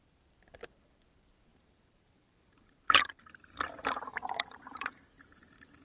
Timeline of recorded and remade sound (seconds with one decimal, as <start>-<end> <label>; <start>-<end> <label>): 0.0-1.5 recorded; 1.5-5.0 remade; 5.0-5.8 recorded